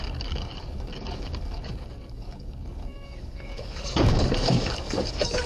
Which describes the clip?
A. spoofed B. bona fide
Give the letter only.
A